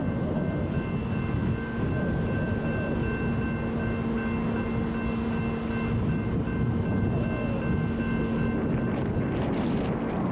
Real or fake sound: real